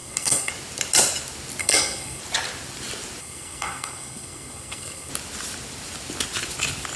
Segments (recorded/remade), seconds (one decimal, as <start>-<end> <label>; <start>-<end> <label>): 0.0-0.5 remade; 0.5-1.6 recorded; 1.6-2.2 remade; 2.2-3.2 recorded; 3.2-5.1 remade; 5.1-7.0 recorded